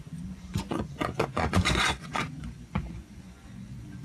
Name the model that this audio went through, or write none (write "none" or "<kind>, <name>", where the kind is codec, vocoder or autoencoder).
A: vocoder, Vocos